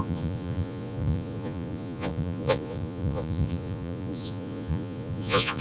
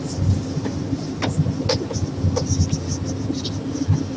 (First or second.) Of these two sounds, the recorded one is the second